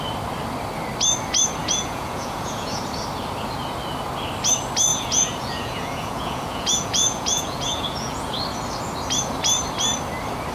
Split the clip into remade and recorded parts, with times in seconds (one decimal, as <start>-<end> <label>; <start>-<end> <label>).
0.0-1.6 recorded; 1.6-2.8 remade; 2.8-4.9 recorded; 4.9-8.4 remade; 8.4-10.5 recorded